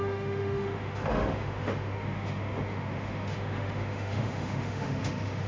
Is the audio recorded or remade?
remade